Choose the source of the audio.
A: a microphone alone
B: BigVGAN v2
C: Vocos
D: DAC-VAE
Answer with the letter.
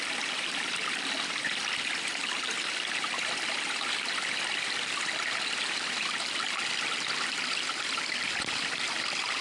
B